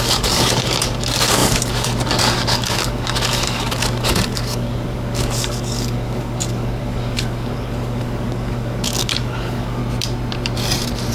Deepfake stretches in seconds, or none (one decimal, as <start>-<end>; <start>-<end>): 0.0-9.8